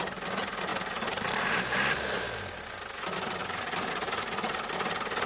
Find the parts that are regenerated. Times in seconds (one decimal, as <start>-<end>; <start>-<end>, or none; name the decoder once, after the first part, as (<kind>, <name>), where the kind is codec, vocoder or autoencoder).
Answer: 0.7-2.4 (vocoder, BigVGAN v2); 3.4-3.9

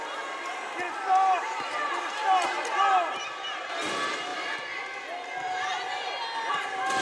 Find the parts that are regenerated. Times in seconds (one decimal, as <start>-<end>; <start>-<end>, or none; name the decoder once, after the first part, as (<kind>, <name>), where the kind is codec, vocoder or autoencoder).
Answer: none

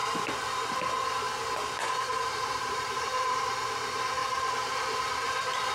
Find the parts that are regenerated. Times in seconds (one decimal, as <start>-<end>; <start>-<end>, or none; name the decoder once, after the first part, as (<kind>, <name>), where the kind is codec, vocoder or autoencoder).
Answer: 2.1-3.5 (vocoder, BigVGAN v2); 4.2-5.7

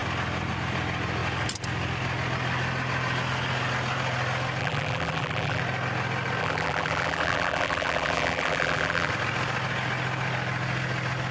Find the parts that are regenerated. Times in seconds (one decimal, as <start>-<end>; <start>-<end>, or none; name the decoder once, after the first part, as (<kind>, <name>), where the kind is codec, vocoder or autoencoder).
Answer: 4.6-5.6 (vocoder, BigVGAN v2); 6.4-9.1